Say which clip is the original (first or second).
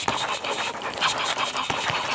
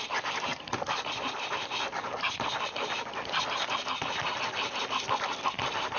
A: first